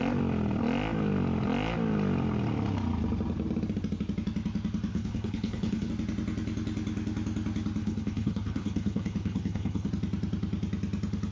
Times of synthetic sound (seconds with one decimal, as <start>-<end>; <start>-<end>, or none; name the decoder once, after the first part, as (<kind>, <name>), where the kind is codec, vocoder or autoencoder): 4.9-5.9 (codec, HILCodec); 7.8-9.9